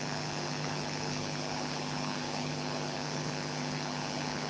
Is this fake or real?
fake